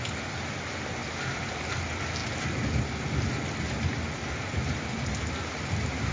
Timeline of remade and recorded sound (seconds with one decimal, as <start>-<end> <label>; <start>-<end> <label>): 0.0-6.1 recorded